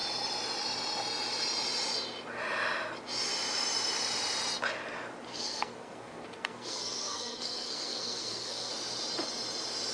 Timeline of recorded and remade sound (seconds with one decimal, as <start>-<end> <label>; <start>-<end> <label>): 0.0-5.3 recorded; 5.3-8.7 remade; 8.7-9.9 recorded